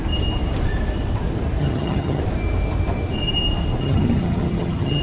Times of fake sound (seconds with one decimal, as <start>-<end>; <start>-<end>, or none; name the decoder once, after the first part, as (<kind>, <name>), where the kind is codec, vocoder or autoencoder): 1.6-2.2 (vocoder, HiFi-GAN); 3.8-5.0